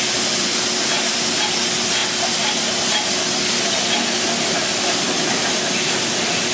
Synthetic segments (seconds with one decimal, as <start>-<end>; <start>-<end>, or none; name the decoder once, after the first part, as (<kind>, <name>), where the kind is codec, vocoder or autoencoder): none